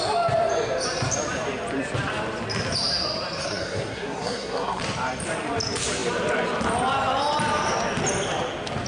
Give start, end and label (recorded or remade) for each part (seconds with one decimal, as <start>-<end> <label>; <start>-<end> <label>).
0.0-3.4 recorded; 3.4-4.8 remade; 4.8-8.9 recorded